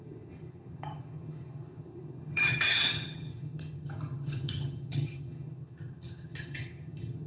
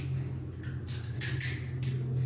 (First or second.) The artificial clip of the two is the first